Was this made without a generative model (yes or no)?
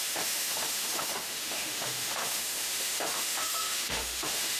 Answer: no